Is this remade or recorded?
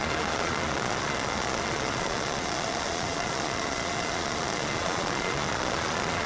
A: remade